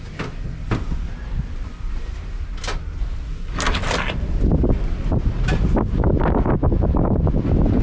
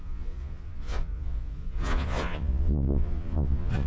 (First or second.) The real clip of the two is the first